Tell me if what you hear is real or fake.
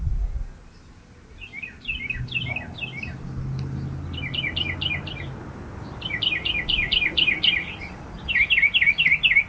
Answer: real